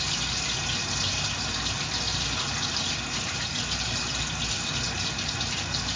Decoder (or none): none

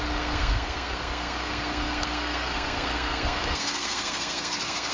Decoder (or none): codec, SNAC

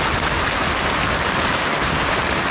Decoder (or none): none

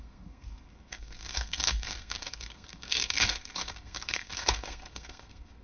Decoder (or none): codec, SNAC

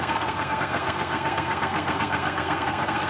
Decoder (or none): codec, SNAC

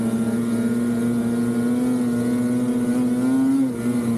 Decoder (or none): none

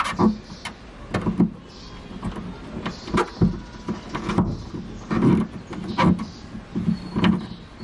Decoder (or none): none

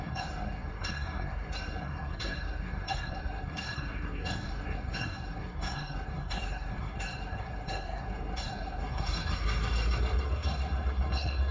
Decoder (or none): codec, SNAC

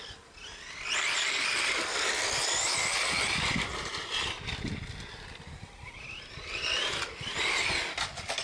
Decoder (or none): none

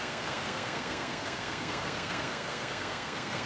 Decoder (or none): codec, SNAC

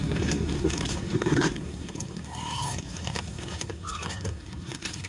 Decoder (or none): codec, SNAC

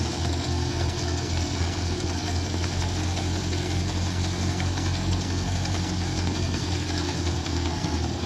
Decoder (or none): codec, SNAC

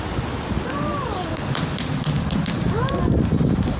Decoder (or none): none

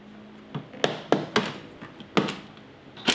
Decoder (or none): none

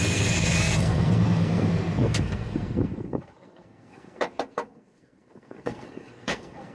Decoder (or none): codec, SNAC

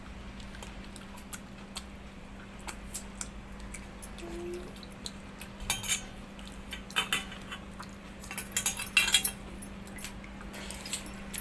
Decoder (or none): none